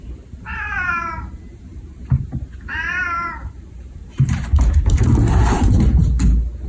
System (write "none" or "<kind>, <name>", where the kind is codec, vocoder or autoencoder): vocoder, BigVGAN v2